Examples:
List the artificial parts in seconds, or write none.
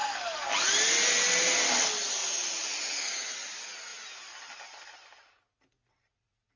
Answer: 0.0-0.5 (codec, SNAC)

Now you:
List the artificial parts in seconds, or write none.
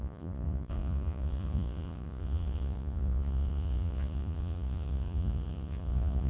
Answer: 0.0-6.3 (vocoder, Vocos)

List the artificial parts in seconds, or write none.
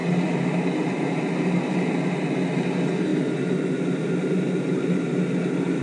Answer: none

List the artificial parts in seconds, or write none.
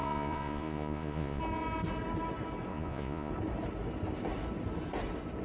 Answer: 0.0-1.4 (vocoder, Vocos); 2.7-3.3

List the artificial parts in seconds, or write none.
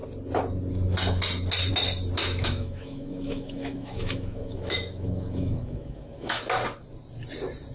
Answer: 2.2-6.4 (autoencoder, DAC-VAE)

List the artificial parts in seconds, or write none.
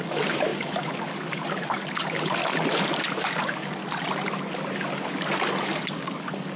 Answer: 0.0-2.4 (codec, DAC); 3.0-3.8; 5.6-6.6